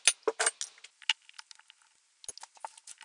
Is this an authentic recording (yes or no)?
yes